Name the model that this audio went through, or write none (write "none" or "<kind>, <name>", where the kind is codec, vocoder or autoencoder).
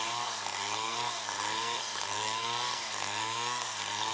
codec, SNAC